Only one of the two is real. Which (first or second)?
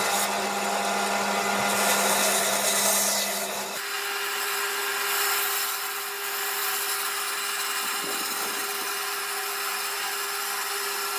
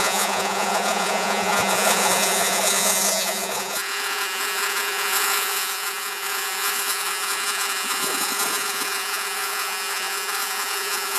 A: first